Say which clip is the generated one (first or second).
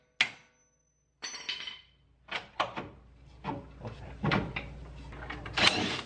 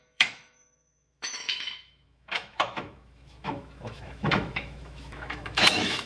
second